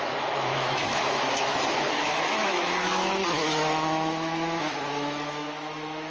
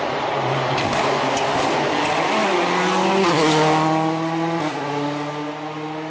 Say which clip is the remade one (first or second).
first